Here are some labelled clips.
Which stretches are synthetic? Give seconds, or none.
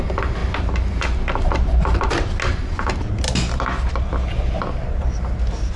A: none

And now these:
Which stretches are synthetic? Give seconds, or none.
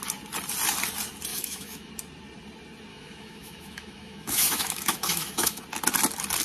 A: 1.3-1.9 (autoencoder, DAC-VAE); 2.9-5.6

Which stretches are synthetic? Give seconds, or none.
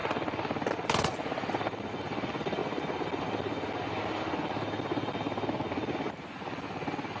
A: none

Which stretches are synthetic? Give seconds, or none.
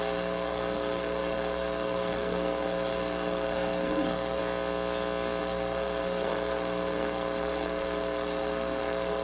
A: 0.0-4.4 (codec, SNAC); 5.4-9.2